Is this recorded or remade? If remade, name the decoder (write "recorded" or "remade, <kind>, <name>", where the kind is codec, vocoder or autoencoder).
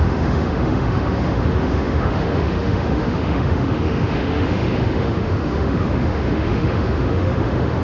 remade, autoencoder, DAC-VAE